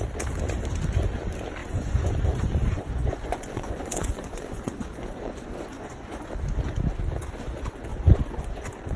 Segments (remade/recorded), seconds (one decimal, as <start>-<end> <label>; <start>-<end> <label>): 0.0-1.6 recorded; 1.6-6.3 remade; 6.3-7.9 recorded; 7.9-9.0 remade